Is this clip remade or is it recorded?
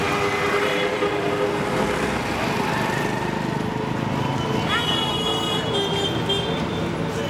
recorded